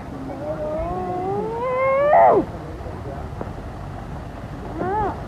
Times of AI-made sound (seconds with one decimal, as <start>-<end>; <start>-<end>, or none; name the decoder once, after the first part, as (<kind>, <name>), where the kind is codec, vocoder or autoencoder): none